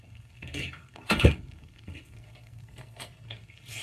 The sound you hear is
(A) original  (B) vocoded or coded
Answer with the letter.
B